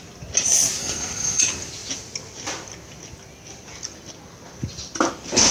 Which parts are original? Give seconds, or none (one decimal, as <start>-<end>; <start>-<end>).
0.0-0.8; 1.4-5.5